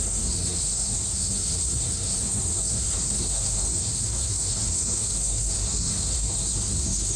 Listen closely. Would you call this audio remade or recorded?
remade